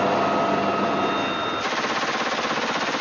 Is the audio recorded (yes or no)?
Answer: yes